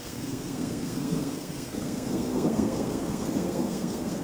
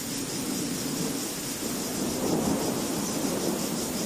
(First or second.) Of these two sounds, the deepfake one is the first